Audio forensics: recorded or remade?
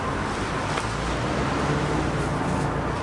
recorded